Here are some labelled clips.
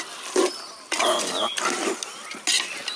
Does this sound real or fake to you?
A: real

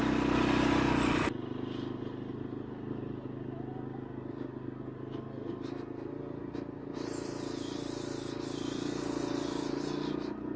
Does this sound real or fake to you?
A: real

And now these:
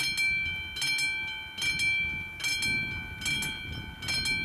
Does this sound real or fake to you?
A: real